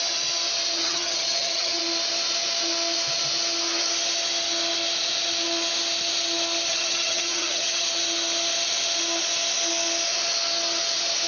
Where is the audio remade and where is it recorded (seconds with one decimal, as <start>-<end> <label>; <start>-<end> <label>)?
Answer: 0.0-0.8 recorded; 0.8-1.8 remade; 1.8-6.7 recorded; 6.7-7.9 remade; 7.9-11.3 recorded